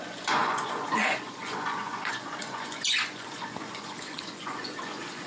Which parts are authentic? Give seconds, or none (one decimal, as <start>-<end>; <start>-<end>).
none